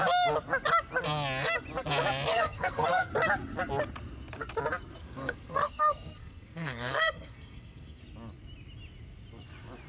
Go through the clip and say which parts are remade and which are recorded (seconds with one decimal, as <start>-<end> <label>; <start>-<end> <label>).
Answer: 0.0-2.3 recorded; 2.3-3.1 remade; 3.1-5.0 recorded; 5.0-8.0 remade; 8.0-9.9 recorded